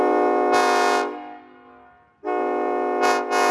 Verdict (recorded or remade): recorded